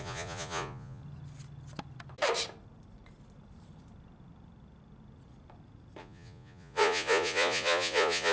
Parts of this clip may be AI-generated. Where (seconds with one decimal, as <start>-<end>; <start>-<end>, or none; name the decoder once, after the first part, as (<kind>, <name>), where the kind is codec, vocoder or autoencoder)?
0.0-1.0 (vocoder, Vocos); 6.0-8.3